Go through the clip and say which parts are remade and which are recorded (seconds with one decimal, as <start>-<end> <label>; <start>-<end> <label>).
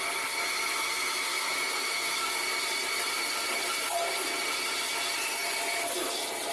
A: 0.0-1.3 recorded; 1.3-2.2 remade; 2.2-6.5 recorded